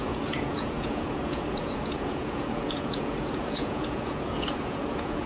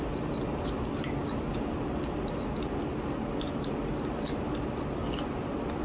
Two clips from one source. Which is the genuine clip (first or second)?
second